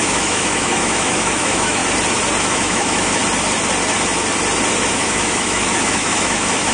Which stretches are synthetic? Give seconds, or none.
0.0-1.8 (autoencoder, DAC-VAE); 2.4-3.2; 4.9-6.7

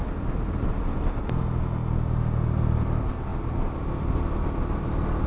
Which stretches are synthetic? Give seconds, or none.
none

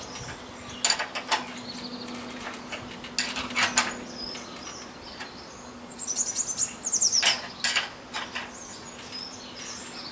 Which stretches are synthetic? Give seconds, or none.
none

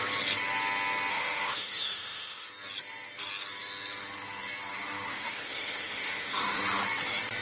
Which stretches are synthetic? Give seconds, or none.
1.1-2.5 (autoencoder, DAC-VAE); 5.1-6.6